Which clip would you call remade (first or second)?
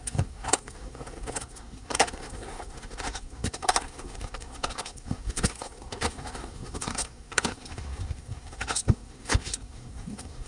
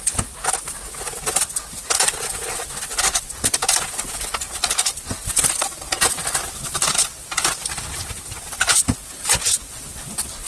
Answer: first